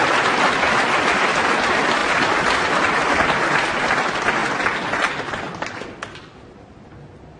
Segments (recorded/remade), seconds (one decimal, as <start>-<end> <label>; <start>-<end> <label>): 0.0-7.4 recorded